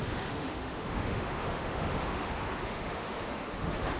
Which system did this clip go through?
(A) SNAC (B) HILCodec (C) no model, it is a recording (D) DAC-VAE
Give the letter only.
D